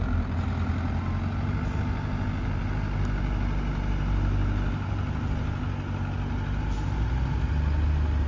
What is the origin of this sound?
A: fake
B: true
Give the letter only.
B